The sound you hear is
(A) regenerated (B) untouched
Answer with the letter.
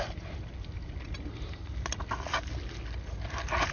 B